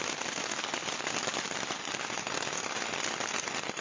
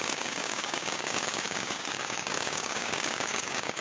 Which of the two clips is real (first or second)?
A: first